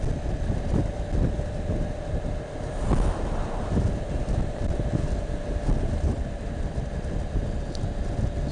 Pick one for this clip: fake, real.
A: real